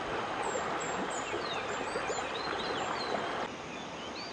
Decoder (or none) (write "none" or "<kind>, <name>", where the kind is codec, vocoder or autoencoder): none